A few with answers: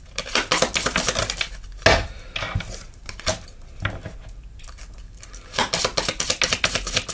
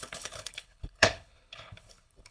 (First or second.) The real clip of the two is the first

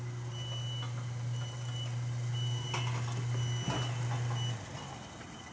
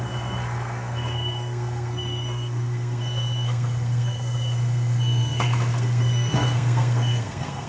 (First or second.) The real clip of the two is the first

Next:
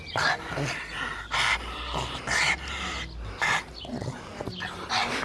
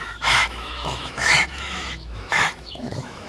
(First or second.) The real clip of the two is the first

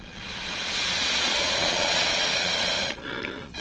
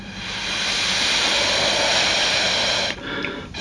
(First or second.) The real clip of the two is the second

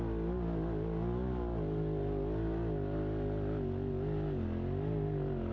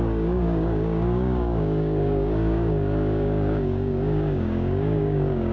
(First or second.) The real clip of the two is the first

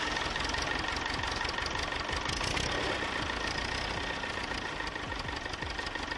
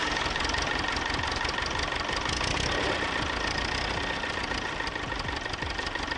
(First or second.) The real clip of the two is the first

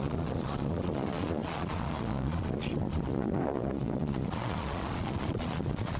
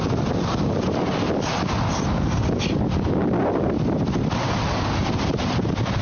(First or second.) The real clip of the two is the second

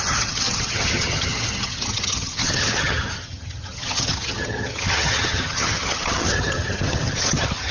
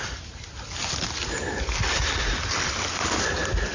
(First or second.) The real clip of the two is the second